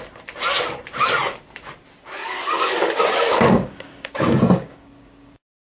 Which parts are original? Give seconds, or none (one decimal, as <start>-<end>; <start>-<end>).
0.0-2.2